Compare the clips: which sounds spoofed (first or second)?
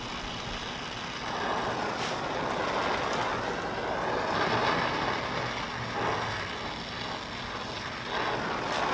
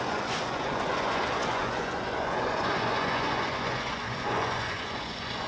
second